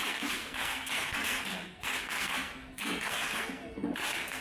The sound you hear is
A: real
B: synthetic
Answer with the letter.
B